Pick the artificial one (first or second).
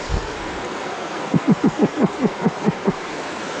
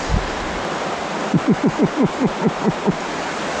first